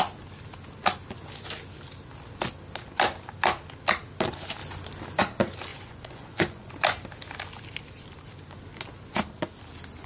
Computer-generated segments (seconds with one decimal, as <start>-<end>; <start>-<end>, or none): 5.7-6.7

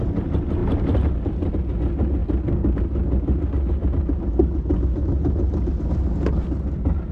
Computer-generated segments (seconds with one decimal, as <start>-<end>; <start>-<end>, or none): none